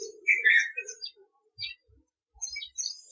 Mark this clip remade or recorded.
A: recorded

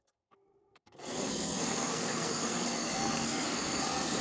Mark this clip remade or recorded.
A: remade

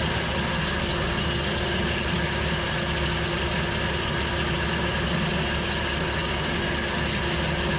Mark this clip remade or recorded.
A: recorded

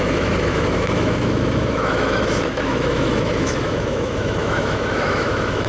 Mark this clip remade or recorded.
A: remade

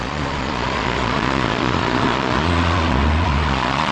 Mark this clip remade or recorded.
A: remade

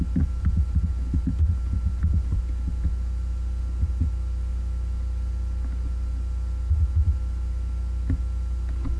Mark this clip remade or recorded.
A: recorded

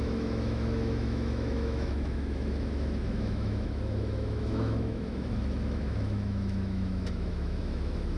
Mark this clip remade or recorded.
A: remade